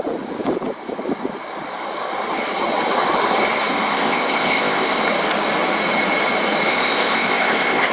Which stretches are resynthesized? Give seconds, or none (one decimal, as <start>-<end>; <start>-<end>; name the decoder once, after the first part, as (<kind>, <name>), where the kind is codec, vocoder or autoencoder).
3.8-5.0 (codec, ZipCodec); 6.7-7.9